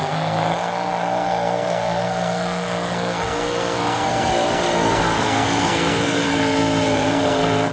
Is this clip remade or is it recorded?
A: remade